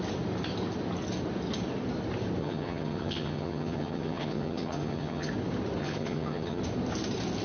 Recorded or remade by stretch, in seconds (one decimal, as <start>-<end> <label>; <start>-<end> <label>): 0.0-2.4 recorded; 2.4-5.3 remade; 5.3-5.8 recorded; 5.8-6.6 remade; 6.6-7.4 recorded